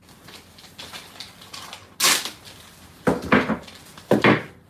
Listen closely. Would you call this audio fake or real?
real